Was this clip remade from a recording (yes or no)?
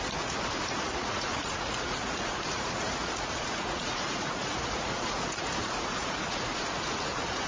yes